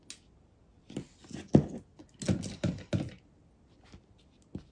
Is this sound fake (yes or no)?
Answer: no